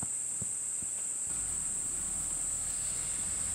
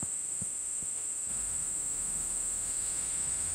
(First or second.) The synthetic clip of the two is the second